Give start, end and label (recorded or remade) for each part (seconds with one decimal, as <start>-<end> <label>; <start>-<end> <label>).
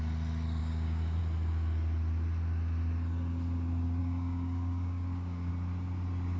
0.0-0.6 recorded; 0.6-1.2 remade; 1.2-4.0 recorded; 4.0-5.5 remade; 5.5-6.4 recorded